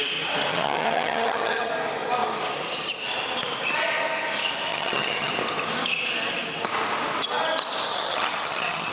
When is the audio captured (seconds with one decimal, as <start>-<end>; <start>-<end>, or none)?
0.0-0.5; 1.7-4.7; 5.3-7.9